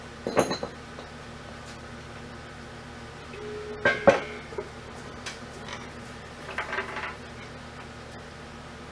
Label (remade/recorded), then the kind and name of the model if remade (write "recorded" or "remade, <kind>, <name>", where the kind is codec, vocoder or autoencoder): recorded